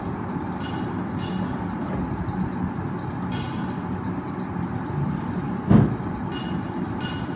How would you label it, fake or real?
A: real